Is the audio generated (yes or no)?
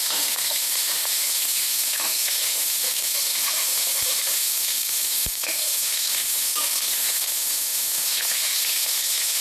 yes